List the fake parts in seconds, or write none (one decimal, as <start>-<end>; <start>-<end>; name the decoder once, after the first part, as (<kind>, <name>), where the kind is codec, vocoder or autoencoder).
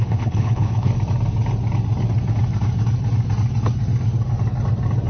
0.0-0.9 (codec, HILCodec)